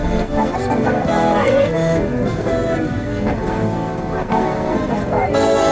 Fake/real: fake